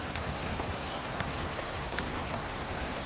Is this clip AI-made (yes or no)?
yes